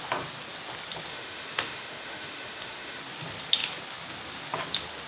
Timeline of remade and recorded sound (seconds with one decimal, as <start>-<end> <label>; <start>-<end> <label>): 0.0-1.1 recorded; 1.1-3.0 remade; 3.0-5.1 recorded